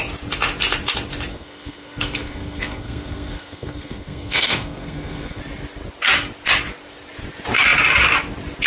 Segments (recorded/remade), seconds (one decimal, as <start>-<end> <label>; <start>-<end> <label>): 0.0-1.3 recorded; 1.3-5.4 remade; 5.4-8.7 recorded